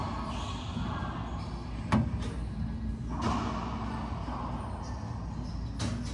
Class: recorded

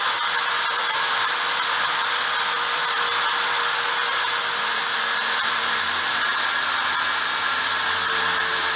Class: recorded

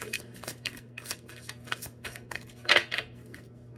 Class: remade